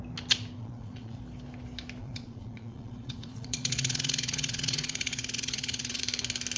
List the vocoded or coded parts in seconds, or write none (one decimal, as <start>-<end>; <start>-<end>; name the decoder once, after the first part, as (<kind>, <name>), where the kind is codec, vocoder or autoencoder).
0.6-1.2 (vocoder, Vocos); 2.0-6.0